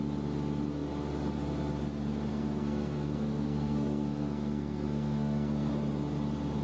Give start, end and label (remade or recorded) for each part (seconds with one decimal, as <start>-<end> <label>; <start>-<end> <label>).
0.0-2.3 recorded; 2.3-5.7 remade; 5.7-6.6 recorded